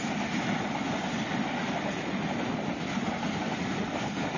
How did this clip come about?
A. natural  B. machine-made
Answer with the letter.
A